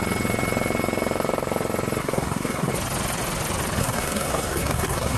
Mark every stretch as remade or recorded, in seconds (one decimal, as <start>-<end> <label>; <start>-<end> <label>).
0.0-2.0 recorded; 2.0-2.7 remade; 2.7-3.8 recorded; 3.8-5.2 remade